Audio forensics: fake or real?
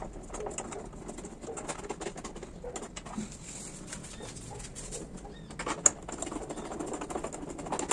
real